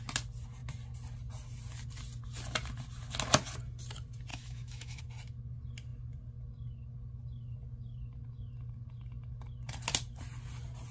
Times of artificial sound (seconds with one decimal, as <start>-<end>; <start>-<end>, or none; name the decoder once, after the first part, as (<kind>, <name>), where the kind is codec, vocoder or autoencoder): 4.3-5.0 (autoencoder, DAC-VAE)